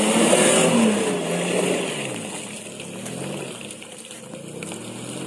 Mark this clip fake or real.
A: real